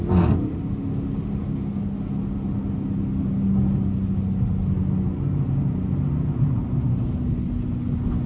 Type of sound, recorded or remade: recorded